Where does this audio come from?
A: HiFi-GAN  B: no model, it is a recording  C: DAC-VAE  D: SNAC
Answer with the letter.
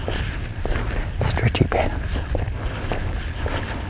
B